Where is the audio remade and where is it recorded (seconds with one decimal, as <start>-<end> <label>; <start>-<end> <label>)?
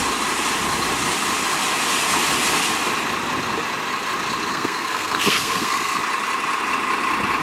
0.0-4.5 recorded; 4.5-6.0 remade; 6.0-7.4 recorded